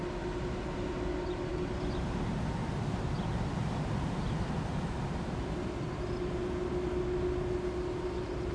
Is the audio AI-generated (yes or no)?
no